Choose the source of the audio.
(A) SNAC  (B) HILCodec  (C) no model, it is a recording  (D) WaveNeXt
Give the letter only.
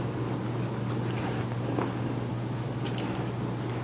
C